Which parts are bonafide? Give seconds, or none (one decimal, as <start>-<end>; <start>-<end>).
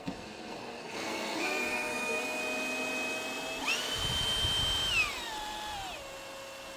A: 2.4-6.8